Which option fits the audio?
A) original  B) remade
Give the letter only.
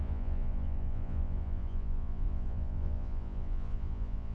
B